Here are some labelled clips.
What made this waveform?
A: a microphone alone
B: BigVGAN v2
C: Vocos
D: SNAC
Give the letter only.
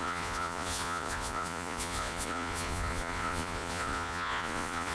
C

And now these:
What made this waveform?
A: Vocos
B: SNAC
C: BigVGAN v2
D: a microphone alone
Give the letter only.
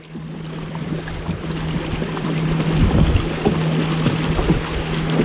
D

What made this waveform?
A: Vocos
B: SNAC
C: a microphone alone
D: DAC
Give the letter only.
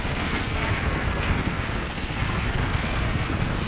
B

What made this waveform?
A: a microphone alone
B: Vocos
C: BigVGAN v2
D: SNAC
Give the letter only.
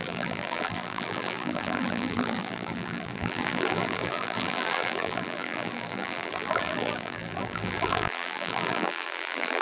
C